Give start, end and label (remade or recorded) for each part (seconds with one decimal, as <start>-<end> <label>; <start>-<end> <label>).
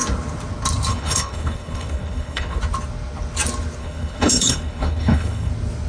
0.0-0.9 recorded; 0.9-2.6 remade; 2.6-3.8 recorded; 3.8-5.5 remade; 5.5-5.9 recorded